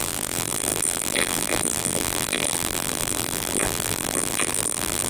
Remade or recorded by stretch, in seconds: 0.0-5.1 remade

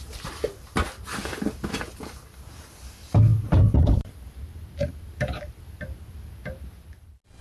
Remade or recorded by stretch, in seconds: 0.0-3.3 recorded; 3.3-5.8 remade; 5.8-7.4 recorded

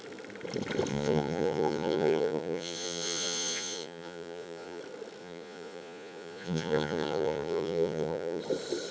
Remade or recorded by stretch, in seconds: 0.0-0.9 recorded; 0.9-4.8 remade; 4.8-5.2 recorded; 5.2-8.4 remade; 8.4-8.9 recorded

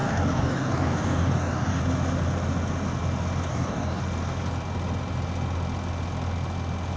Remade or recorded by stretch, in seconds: 0.0-1.8 remade; 1.8-3.5 recorded; 3.5-4.0 remade; 4.0-7.0 recorded

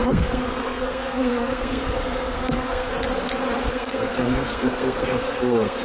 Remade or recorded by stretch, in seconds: 0.0-2.9 remade; 2.9-3.7 recorded; 3.7-5.8 remade

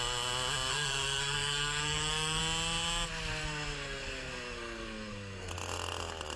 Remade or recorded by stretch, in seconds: 0.0-0.7 recorded; 0.7-2.4 remade; 2.4-3.4 recorded; 3.4-5.5 remade; 5.5-6.4 recorded

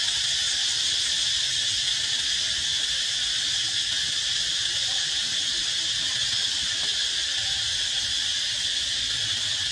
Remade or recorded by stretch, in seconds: 0.0-9.7 recorded

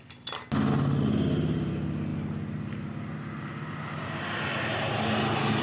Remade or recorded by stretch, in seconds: 0.0-5.6 recorded